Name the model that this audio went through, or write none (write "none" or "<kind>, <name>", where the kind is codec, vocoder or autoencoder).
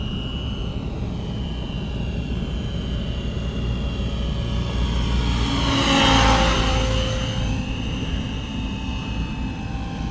none